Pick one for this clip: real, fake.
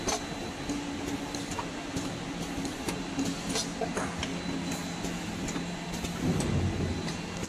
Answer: real